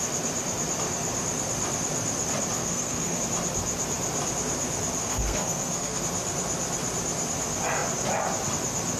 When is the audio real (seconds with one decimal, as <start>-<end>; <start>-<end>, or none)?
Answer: 0.0-2.6; 3.2-5.0; 6.0-9.0